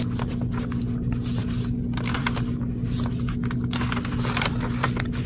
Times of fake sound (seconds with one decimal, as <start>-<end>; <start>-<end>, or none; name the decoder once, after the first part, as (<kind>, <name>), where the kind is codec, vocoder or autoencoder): none